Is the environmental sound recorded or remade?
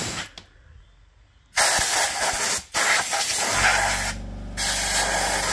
recorded